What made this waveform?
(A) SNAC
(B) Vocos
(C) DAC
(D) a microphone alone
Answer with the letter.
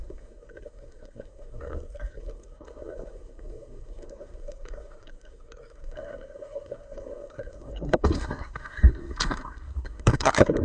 A